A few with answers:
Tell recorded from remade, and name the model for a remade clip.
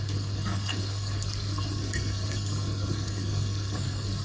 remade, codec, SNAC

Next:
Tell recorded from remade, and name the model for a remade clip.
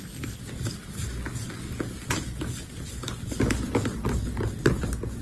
recorded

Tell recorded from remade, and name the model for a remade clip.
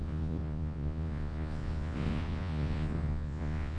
remade, vocoder, Vocos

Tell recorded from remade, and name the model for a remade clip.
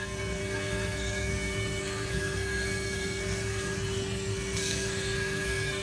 remade, codec, SNAC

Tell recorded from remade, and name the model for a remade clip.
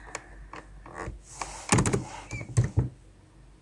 recorded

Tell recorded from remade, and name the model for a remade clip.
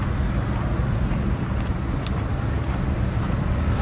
recorded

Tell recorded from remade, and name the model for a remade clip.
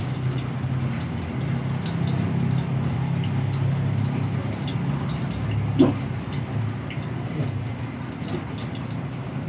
recorded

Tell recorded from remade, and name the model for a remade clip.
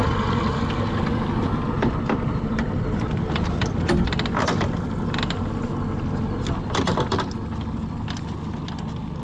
recorded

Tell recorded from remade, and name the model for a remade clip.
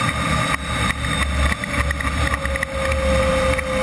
recorded